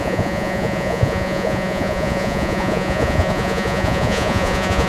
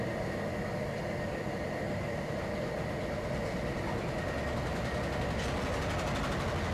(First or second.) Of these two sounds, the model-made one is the first